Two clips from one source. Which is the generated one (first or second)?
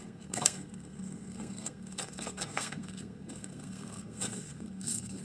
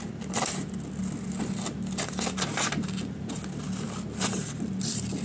first